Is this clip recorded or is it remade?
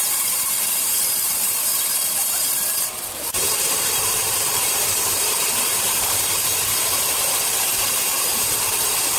remade